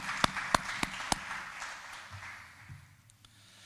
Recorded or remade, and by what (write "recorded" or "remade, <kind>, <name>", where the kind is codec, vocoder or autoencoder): recorded